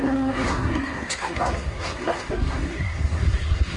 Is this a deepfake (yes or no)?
yes